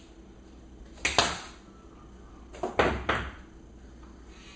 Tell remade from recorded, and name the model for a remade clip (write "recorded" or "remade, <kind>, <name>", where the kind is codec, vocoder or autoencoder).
recorded